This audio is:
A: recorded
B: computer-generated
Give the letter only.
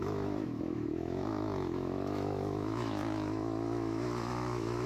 B